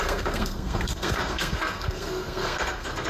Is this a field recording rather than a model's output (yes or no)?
no